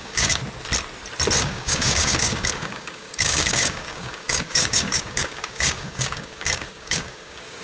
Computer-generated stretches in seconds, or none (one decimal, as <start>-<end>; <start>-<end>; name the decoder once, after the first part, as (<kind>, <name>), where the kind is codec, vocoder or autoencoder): 0.0-0.4 (codec, DAC); 1.4-7.6